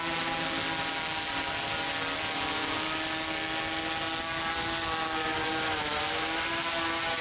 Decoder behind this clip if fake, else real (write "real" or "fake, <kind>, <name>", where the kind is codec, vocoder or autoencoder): real